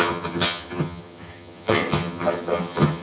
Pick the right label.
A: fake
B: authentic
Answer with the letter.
A